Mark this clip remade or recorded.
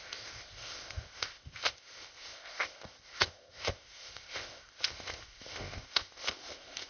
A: remade